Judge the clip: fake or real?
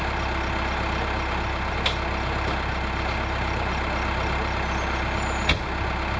real